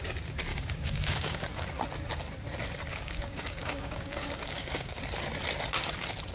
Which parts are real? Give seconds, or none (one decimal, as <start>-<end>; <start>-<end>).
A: 0.0-0.5; 1.4-2.9; 5.0-6.3